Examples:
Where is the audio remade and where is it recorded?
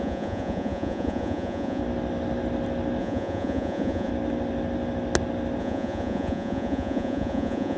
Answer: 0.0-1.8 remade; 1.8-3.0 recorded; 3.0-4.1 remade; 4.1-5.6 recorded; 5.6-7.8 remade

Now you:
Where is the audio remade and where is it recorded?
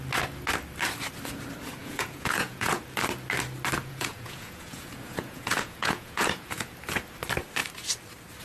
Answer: 0.0-1.8 recorded; 1.8-2.8 remade; 2.8-3.8 recorded; 3.8-6.7 remade; 6.7-8.4 recorded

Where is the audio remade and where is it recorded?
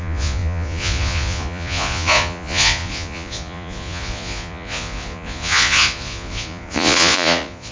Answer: 0.0-7.7 remade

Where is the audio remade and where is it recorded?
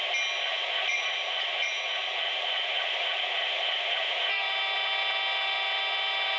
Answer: 0.0-0.5 recorded; 0.5-4.3 remade; 4.3-6.4 recorded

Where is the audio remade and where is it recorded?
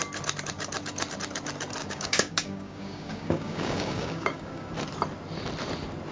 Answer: 0.0-1.8 recorded; 1.8-4.7 remade; 4.7-6.1 recorded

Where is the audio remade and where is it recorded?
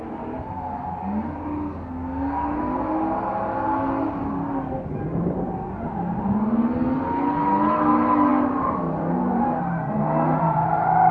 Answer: 0.0-11.1 recorded